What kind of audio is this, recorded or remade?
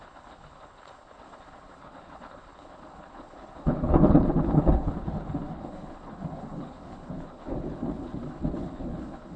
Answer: remade